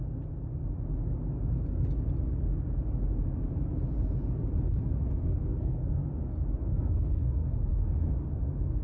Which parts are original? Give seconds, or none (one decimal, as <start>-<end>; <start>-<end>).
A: 0.0-4.6; 6.0-6.6

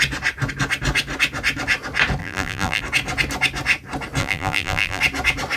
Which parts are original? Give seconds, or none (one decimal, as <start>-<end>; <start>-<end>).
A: 0.0-2.2; 2.8-4.2; 5.0-5.6

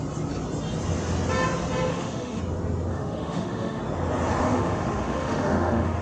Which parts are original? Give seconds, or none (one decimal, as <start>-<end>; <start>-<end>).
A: 0.0-1.9; 2.4-2.9; 3.8-4.4

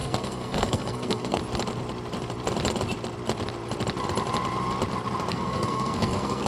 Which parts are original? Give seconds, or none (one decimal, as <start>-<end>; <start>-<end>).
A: 1.4-5.3

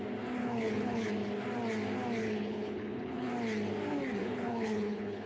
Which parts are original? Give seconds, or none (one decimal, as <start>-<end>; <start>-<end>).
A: 0.0-0.4; 1.1-2.2; 3.3-4.2

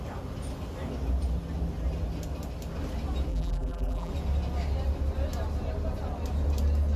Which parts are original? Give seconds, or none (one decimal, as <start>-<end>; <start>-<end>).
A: 0.0-3.3; 4.1-7.0

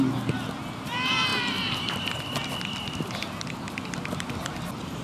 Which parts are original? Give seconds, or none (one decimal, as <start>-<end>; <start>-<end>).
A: 0.0-5.0